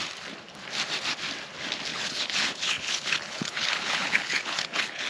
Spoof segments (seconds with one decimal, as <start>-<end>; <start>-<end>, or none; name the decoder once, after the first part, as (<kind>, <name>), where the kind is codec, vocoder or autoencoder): 1.9-5.1 (codec, HILCodec)

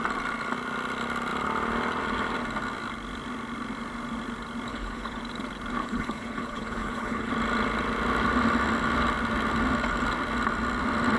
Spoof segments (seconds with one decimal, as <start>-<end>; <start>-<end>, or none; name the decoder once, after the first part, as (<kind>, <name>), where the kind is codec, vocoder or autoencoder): 4.7-5.2 (codec, HILCodec); 5.8-7.3